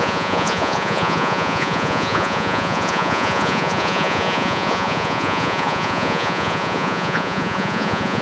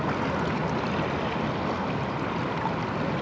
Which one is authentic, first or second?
second